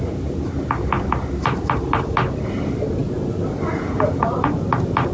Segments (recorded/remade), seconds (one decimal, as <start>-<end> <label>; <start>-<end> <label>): 0.0-5.1 recorded